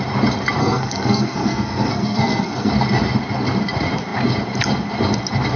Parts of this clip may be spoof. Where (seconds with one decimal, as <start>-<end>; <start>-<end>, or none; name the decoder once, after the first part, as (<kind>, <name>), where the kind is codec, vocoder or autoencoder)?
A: 0.6-2.7 (codec, SNAC)

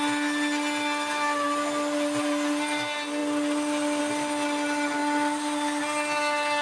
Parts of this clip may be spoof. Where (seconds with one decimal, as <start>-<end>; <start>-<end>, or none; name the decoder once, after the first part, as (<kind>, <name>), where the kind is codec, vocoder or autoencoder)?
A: none

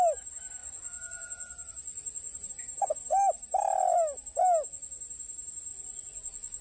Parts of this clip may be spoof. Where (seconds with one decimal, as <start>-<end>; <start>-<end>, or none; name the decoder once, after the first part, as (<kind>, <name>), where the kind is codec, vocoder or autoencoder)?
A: 0.6-2.5 (vocoder, Vocos); 5.7-6.6

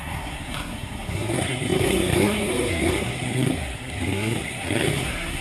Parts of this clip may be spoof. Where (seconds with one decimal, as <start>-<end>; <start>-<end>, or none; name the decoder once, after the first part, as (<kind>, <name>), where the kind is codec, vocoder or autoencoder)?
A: 0.0-5.4 (codec, SNAC)

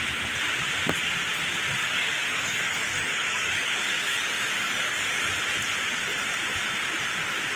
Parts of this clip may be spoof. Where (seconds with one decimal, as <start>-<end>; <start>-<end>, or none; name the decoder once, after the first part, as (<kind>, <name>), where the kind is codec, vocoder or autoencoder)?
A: 1.8-5.2 (codec, DAC)

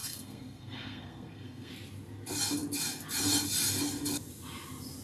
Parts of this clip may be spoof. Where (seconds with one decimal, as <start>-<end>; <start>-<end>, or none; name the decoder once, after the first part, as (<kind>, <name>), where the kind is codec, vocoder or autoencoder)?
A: 0.0-1.7 (codec, SNAC)

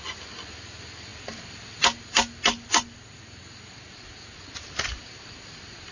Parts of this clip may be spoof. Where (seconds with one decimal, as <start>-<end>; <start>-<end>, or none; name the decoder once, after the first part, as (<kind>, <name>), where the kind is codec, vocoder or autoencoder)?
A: none